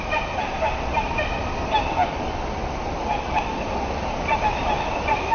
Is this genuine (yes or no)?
yes